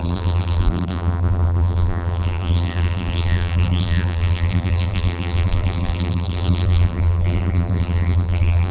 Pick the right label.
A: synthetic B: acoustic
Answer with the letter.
A